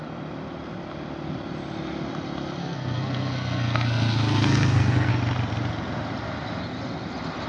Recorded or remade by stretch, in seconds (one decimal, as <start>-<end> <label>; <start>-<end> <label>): 0.0-2.6 recorded; 2.6-5.1 remade; 5.1-7.5 recorded